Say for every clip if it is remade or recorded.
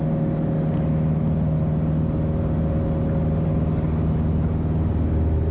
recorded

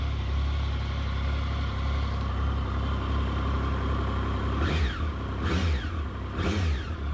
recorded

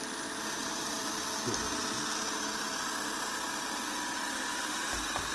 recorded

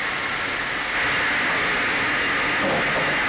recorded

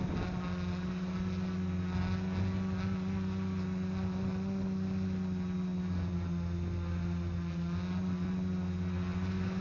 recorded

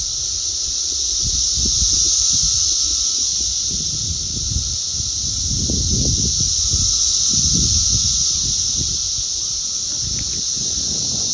recorded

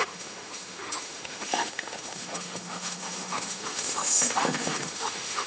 remade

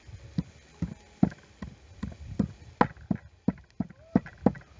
recorded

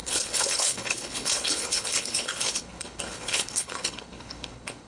remade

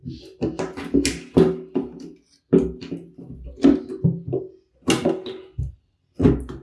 recorded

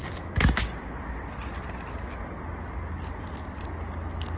recorded